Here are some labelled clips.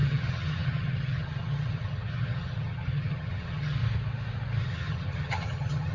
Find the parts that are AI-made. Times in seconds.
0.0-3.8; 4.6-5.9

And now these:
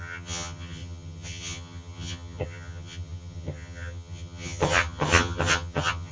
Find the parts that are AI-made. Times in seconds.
0.0-6.1

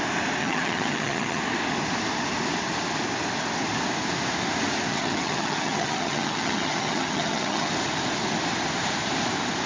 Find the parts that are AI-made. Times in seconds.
0.4-1.4; 4.9-7.7

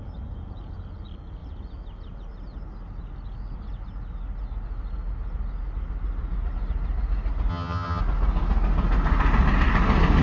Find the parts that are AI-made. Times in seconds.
7.5-8.0

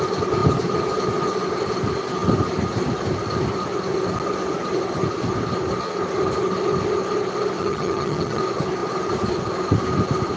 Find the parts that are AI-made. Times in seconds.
7.6-8.4

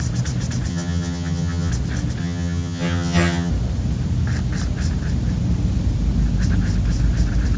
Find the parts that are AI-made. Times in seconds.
0.7-1.7; 2.2-3.5

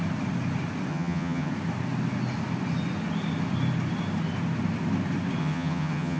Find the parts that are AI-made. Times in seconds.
0.9-1.5; 5.4-6.2

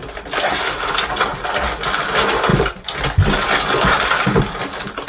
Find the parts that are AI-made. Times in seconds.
none